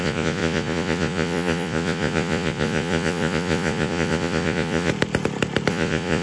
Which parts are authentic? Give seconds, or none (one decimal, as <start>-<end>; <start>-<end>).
4.9-5.7